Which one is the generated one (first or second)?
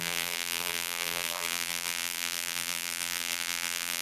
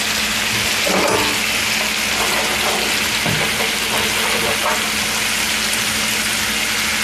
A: first